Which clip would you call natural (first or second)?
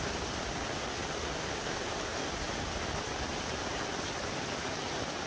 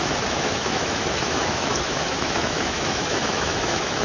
first